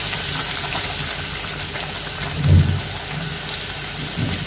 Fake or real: real